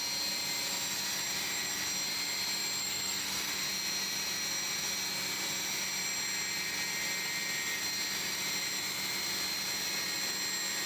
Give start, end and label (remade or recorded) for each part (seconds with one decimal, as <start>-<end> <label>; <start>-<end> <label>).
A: 0.0-2.8 recorded; 2.8-3.5 remade; 3.5-10.9 recorded

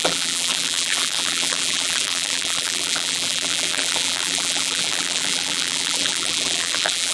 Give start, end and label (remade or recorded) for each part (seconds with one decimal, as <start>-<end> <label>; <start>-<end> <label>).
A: 0.0-7.1 remade

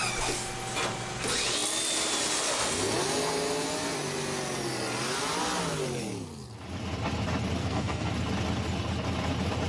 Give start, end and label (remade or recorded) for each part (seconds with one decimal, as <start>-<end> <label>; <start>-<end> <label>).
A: 0.0-7.6 recorded; 7.6-8.1 remade; 8.1-9.7 recorded

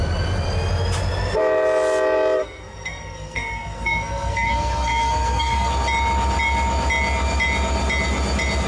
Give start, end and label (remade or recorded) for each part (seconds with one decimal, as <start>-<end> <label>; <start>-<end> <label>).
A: 0.0-2.4 recorded; 2.4-5.7 remade; 5.7-8.7 recorded